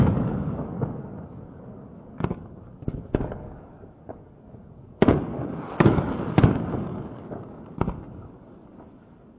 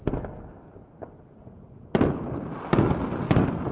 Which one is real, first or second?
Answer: second